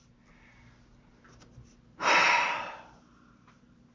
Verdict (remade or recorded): recorded